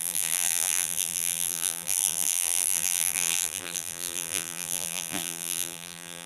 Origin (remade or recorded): remade